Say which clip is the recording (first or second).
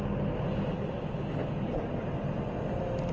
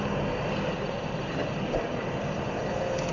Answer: first